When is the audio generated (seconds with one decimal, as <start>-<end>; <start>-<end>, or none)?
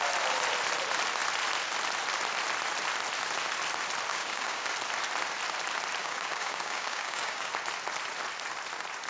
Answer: 4.1-4.7; 6.0-7.5